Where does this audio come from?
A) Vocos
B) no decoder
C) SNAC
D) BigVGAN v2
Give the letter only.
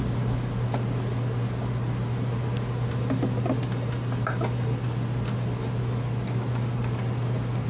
B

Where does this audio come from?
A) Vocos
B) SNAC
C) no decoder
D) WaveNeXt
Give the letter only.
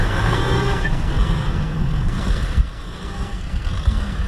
B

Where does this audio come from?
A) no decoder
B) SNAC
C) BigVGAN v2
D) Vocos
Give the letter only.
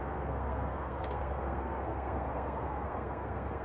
B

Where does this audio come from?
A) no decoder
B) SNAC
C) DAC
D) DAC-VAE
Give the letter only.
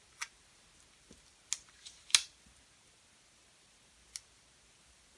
A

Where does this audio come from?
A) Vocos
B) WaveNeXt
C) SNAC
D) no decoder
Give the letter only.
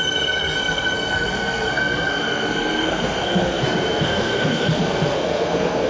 C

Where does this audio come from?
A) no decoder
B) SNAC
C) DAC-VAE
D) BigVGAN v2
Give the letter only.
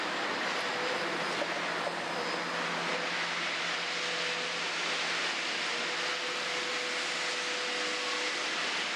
A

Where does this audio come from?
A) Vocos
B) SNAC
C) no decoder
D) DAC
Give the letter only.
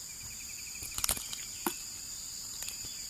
C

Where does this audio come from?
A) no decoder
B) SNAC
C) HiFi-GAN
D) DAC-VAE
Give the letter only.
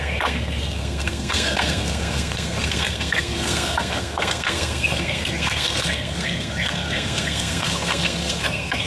B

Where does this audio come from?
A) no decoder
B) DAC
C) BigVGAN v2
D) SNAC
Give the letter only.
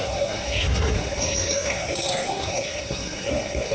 D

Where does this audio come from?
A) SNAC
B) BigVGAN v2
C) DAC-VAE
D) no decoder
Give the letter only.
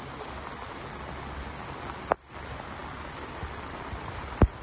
D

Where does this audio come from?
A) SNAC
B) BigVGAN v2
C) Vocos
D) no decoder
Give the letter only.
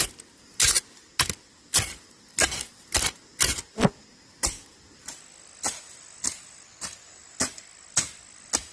D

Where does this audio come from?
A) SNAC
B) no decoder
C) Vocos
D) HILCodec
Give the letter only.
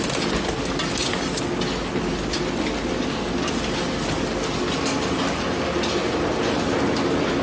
B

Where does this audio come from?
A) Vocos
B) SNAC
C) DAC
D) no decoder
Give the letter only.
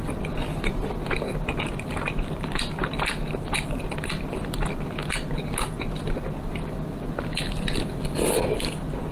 D